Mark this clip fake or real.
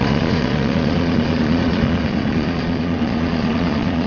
fake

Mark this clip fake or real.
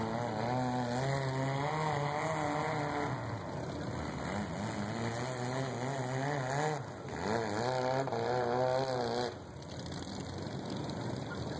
real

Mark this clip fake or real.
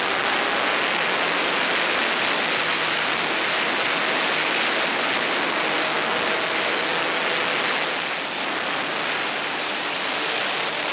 real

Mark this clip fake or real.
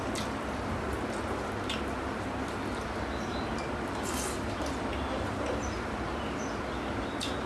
real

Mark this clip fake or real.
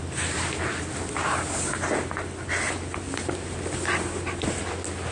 real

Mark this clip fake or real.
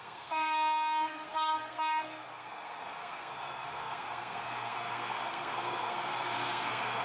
fake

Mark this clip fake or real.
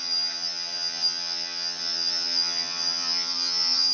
fake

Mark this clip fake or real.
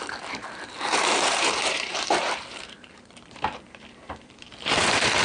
fake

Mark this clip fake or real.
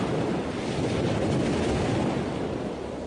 real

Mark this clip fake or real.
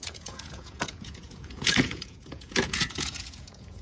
fake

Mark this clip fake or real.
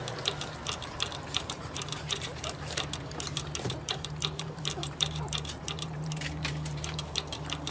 fake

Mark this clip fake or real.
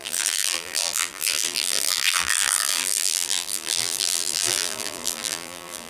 fake